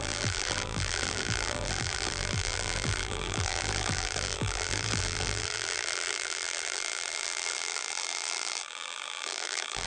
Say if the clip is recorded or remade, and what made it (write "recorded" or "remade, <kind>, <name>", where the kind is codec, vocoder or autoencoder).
remade, vocoder, BigVGAN v2